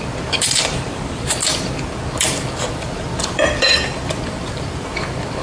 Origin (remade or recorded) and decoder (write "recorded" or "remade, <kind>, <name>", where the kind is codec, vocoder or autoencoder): remade, vocoder, BigVGAN v2